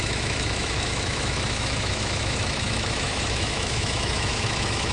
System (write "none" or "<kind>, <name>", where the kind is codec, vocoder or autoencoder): autoencoder, DAC-VAE